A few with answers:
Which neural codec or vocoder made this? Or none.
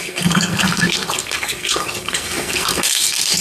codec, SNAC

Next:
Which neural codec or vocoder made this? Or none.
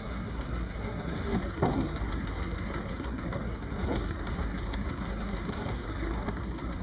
codec, SNAC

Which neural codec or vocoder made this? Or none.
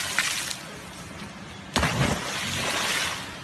none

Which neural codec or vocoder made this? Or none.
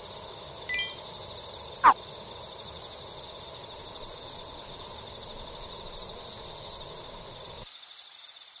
none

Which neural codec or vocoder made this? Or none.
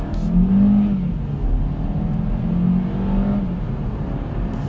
none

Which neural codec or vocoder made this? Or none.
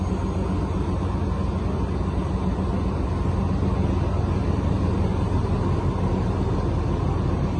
none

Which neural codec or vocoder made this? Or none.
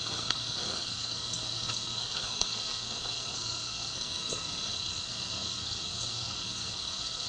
codec, SNAC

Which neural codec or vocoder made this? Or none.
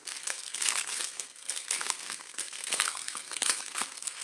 codec, SNAC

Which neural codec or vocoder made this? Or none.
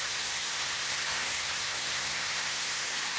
codec, SNAC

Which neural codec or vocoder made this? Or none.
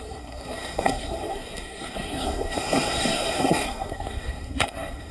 codec, SNAC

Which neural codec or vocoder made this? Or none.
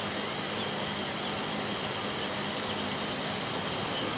none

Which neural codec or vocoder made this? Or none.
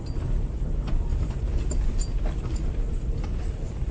none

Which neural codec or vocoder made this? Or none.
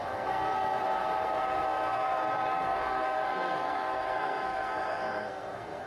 codec, SNAC